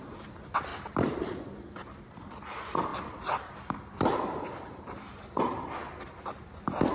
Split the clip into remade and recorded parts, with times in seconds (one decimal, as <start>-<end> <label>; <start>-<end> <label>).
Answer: 0.0-5.8 remade; 5.8-6.9 recorded